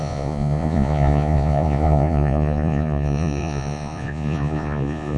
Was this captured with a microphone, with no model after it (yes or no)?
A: no